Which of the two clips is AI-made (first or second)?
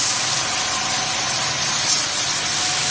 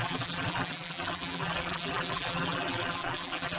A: second